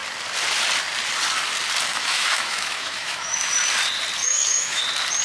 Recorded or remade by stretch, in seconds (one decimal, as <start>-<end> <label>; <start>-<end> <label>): 0.0-1.9 recorded; 1.9-3.5 remade; 3.5-4.2 recorded; 4.2-4.8 remade; 4.8-5.2 recorded

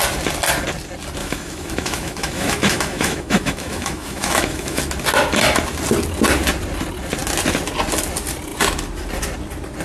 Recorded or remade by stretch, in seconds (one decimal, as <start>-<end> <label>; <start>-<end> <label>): 0.0-1.2 recorded; 1.2-4.8 remade; 4.8-9.8 recorded